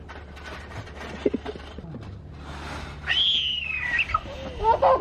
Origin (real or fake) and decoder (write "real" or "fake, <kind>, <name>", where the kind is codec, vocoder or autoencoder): real